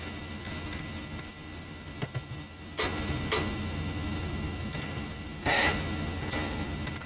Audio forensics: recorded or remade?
recorded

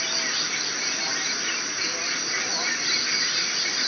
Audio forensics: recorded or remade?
recorded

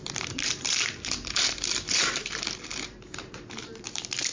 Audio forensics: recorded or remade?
remade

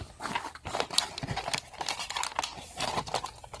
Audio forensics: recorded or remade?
recorded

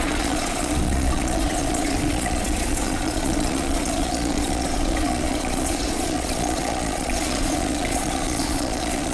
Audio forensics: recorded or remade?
remade